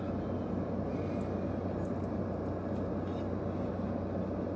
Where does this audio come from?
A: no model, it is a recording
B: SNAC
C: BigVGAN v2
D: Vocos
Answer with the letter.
A